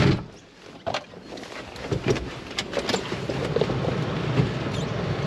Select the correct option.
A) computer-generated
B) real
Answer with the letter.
B